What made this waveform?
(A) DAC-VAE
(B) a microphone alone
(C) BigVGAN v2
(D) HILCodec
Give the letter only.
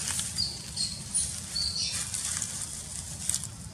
B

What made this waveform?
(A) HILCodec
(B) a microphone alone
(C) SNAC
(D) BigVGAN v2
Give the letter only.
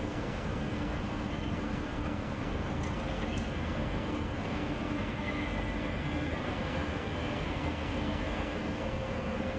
C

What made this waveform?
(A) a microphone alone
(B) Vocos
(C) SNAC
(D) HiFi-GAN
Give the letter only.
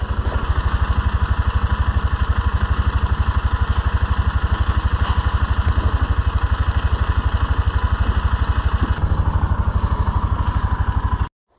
A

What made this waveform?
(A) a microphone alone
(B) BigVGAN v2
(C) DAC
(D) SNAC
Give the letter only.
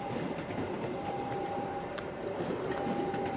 B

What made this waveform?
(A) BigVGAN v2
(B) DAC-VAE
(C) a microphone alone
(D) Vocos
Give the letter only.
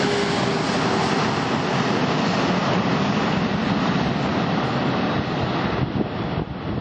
C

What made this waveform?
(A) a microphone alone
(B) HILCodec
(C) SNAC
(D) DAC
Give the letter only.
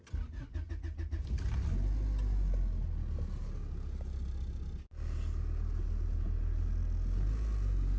A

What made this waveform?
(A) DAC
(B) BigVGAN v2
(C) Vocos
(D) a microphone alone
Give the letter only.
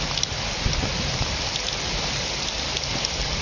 D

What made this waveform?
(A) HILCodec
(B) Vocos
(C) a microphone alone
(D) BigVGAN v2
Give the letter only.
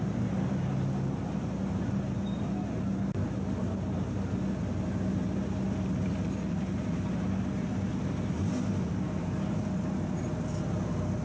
C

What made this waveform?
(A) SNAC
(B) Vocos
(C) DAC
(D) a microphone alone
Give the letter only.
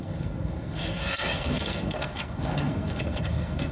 A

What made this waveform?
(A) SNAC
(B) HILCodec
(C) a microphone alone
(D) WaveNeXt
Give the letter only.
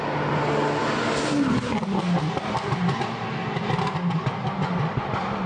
C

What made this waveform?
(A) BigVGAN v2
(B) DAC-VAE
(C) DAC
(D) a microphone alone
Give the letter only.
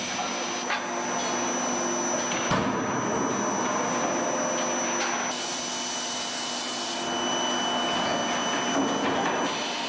D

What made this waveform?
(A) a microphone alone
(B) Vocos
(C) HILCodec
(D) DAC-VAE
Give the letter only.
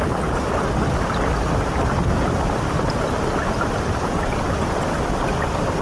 A